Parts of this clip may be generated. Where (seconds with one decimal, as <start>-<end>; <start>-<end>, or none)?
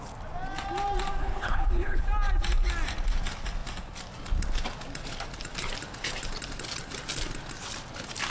1.2-2.0